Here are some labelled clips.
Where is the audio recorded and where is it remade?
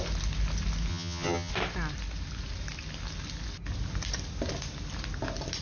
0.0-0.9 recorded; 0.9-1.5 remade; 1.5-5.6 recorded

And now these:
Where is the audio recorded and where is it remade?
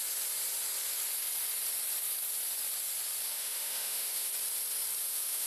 0.0-3.3 recorded; 3.3-4.3 remade; 4.3-5.0 recorded; 5.0-5.5 remade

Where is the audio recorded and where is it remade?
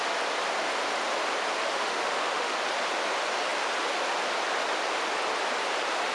0.0-1.6 recorded; 1.6-2.6 remade; 2.6-6.1 recorded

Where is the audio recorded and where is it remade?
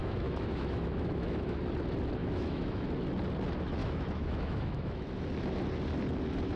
0.0-1.6 remade; 1.6-2.2 recorded; 2.2-2.9 remade; 2.9-3.8 recorded; 3.8-5.1 remade; 5.1-6.6 recorded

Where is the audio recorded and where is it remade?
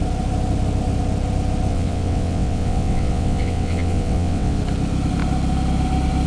0.0-1.7 recorded; 1.7-4.6 remade; 4.6-6.3 recorded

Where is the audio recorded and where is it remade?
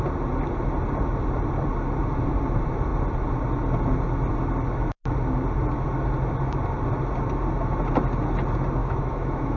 0.0-8.8 recorded; 8.8-9.6 remade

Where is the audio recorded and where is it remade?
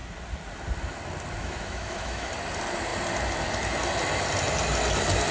0.0-1.4 recorded; 1.4-2.3 remade; 2.3-5.3 recorded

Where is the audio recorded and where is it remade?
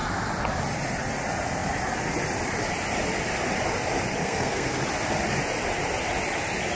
0.0-4.2 recorded; 4.2-4.8 remade; 4.8-6.8 recorded